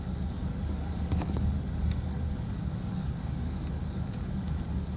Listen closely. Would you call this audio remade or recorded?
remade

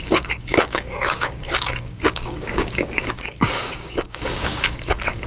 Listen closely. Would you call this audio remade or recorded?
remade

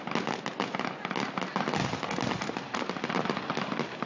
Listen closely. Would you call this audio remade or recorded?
recorded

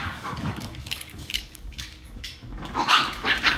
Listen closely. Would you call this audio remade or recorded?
remade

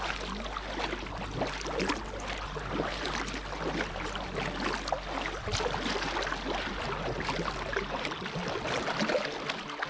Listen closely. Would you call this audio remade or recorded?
recorded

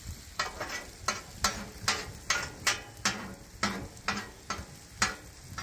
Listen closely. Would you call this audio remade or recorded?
recorded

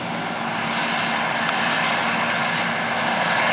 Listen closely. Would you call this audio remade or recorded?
recorded